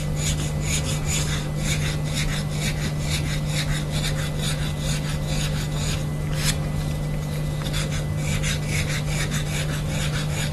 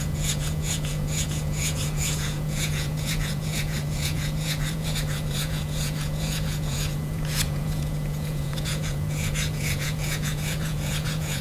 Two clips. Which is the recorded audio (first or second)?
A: first